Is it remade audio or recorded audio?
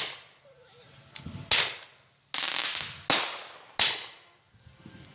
recorded